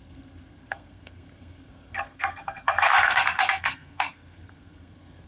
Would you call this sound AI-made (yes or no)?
yes